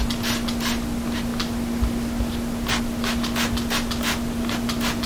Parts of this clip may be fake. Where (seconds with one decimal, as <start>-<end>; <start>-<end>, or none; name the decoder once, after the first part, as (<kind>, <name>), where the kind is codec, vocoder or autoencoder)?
none